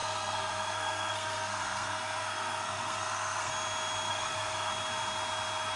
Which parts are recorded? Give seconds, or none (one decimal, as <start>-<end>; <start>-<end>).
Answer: 3.5-4.1; 4.7-5.8